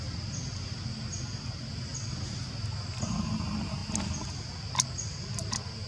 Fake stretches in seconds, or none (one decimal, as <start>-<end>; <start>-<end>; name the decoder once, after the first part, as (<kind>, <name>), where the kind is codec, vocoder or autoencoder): none

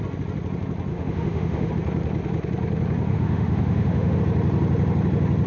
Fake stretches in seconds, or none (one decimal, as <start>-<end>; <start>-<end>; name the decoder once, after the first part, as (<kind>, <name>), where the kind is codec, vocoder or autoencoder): 0.9-1.7 (autoencoder, DAC-VAE); 3.1-4.2

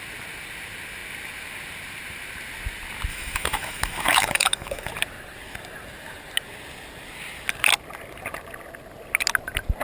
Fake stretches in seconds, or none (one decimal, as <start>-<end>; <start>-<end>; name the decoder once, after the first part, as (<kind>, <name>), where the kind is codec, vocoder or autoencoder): 3.1-4.9 (autoencoder, DAC-VAE)

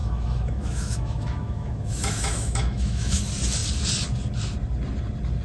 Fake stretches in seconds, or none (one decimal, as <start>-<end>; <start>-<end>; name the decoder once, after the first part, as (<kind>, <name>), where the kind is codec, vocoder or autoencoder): 0.0-3.2 (autoencoder, DAC-VAE)

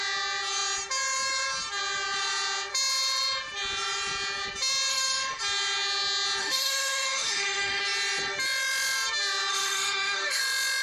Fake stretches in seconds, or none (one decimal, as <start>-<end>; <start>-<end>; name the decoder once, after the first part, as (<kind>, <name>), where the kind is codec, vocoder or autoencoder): 4.9-5.4 (autoencoder, DAC-VAE); 6.4-7.8; 9.5-10.4

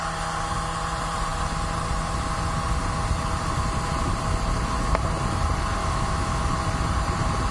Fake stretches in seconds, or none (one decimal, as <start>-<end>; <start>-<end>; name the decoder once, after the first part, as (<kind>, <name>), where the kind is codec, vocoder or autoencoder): 5.8-6.5 (autoencoder, DAC-VAE)

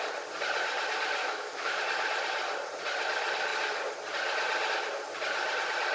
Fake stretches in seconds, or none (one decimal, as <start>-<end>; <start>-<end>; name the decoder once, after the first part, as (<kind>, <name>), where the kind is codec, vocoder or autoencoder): 1.2-1.8 (autoencoder, DAC-VAE)